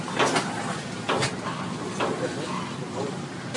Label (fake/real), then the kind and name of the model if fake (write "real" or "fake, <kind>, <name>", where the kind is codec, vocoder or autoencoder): real